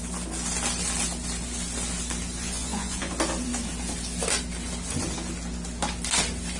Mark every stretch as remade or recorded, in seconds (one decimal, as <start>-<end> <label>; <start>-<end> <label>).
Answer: 0.0-2.4 recorded; 2.4-3.1 remade; 3.1-6.6 recorded